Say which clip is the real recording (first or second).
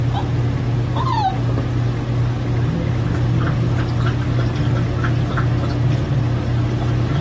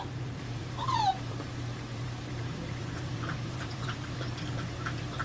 first